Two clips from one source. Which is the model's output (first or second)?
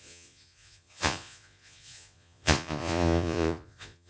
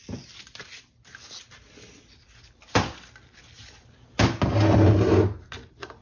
first